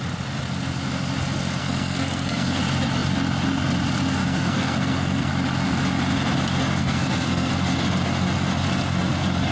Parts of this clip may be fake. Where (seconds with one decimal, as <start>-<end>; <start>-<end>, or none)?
1.6-2.6; 4.2-5.3; 6.8-7.5